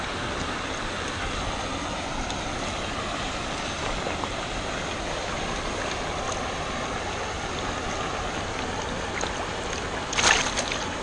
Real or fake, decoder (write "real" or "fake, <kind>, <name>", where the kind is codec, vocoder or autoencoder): real